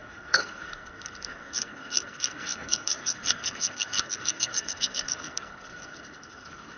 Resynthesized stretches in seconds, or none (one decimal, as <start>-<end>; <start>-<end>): 0.0-6.8